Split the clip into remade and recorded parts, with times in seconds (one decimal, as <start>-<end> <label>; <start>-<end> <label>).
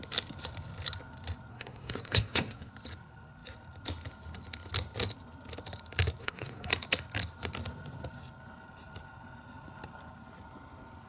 0.0-1.5 recorded; 1.5-2.7 remade; 2.7-6.2 recorded; 6.2-6.7 remade; 6.7-11.1 recorded